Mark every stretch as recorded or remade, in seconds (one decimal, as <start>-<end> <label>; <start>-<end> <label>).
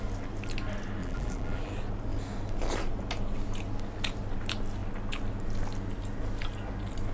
0.0-1.0 recorded; 1.0-1.7 remade; 1.7-7.1 recorded